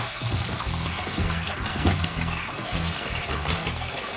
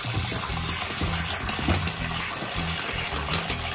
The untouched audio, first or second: second